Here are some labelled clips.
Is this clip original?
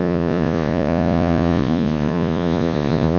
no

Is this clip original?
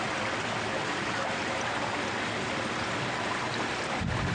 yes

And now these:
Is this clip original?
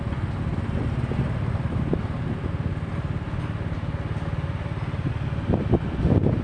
yes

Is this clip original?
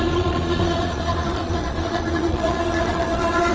no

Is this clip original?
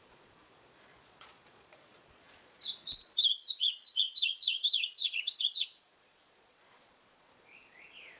no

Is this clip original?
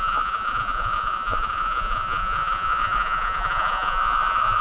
no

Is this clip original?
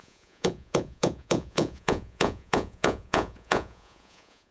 no